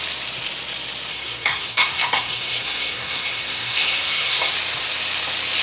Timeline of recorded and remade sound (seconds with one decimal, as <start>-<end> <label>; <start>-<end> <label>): 0.0-1.1 recorded; 1.1-4.5 remade; 4.5-5.6 recorded